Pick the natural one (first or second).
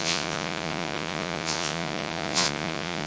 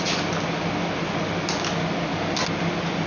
second